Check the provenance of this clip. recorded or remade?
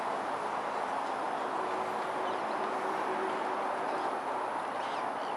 recorded